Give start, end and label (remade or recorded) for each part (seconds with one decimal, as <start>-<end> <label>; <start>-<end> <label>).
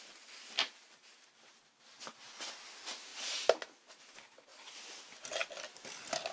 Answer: 0.0-6.3 recorded